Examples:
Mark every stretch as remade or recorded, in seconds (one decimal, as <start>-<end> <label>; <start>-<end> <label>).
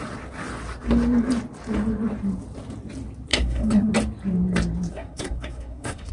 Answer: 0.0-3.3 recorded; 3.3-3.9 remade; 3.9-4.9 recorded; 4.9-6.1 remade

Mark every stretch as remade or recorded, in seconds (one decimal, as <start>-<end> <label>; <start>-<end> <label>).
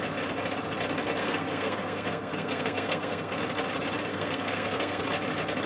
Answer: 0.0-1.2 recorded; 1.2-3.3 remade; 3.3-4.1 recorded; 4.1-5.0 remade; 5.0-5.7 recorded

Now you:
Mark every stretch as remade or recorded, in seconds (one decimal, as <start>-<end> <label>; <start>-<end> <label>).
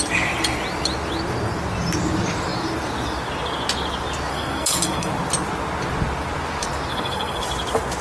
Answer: 0.0-4.3 recorded; 4.3-5.1 remade; 5.1-6.9 recorded; 6.9-7.4 remade; 7.4-8.0 recorded